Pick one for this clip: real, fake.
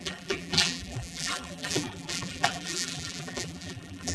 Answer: fake